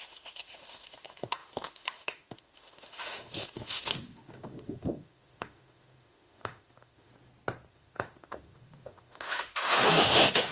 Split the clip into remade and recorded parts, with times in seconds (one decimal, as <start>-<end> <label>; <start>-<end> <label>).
0.0-7.1 remade; 7.1-7.7 recorded; 7.7-10.5 remade